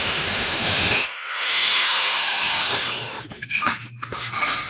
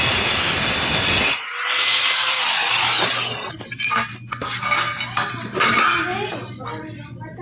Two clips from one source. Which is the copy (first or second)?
first